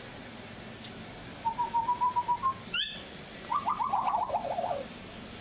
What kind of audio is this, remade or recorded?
recorded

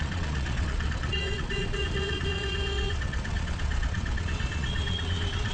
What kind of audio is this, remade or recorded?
remade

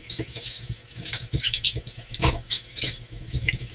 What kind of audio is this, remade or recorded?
remade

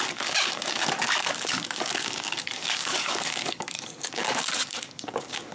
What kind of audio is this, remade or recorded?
remade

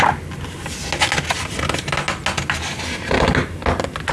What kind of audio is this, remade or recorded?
recorded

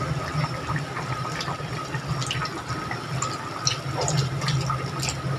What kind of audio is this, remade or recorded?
recorded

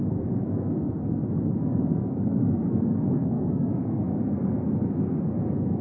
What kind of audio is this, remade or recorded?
remade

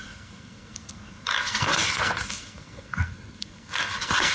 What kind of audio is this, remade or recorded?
remade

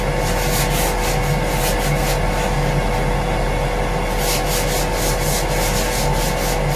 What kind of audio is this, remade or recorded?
recorded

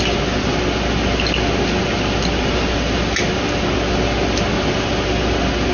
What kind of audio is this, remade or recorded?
recorded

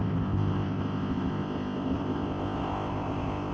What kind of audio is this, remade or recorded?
remade